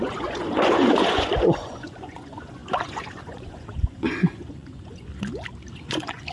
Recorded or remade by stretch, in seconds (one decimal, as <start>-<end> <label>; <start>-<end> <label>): 0.0-5.1 remade; 5.1-5.7 recorded; 5.7-6.3 remade